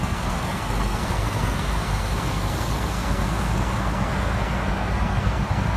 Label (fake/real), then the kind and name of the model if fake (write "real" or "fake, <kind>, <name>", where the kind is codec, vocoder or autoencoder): fake, codec, SNAC